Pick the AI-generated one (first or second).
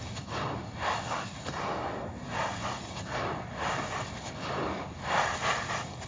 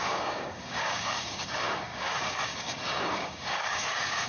second